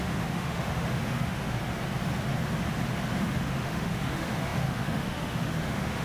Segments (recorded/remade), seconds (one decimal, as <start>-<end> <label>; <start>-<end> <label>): 0.0-1.6 remade; 1.6-3.1 recorded; 3.1-6.0 remade